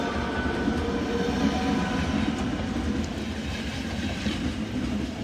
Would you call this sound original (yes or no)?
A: yes